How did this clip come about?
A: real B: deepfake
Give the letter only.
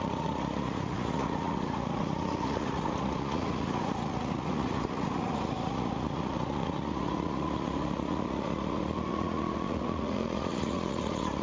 B